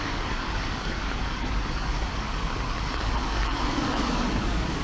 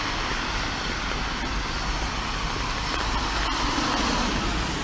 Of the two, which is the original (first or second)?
second